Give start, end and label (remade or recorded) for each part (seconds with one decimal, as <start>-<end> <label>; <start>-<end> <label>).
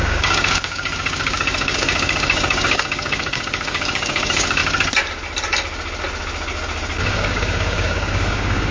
0.0-4.6 remade; 4.6-7.0 recorded; 7.0-8.7 remade